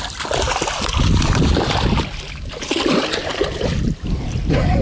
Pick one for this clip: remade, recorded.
recorded